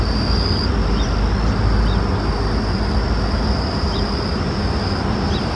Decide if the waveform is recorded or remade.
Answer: recorded